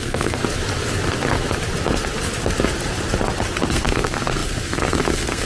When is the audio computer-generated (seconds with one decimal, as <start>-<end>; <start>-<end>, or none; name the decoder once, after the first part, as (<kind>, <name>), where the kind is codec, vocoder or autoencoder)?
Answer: 0.0-0.4 (codec, SNAC); 3.7-5.5